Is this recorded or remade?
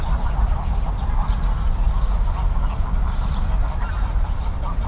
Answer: recorded